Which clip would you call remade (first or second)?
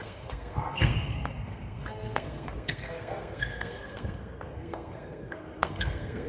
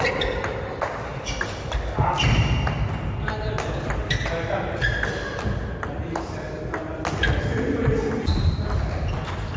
first